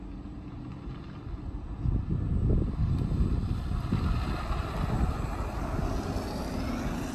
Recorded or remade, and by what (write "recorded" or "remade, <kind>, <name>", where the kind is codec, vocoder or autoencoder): recorded